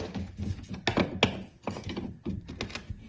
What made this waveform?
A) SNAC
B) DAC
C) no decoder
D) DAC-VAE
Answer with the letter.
C